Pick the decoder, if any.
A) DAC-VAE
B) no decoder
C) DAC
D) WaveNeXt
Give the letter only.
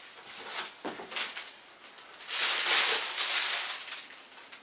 B